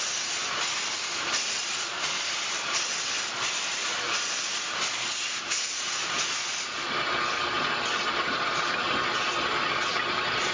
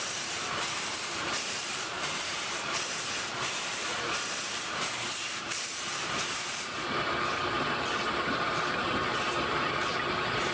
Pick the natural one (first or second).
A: first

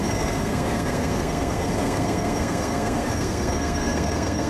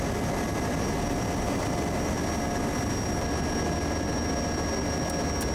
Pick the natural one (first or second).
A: second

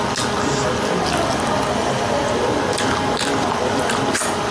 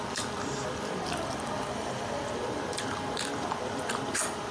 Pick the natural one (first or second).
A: first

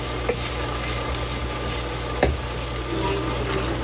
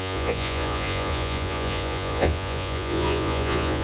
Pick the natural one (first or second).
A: first